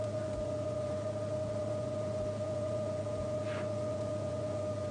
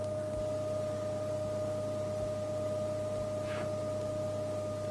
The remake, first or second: first